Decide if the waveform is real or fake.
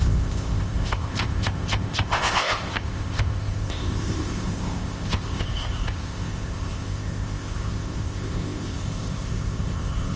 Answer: fake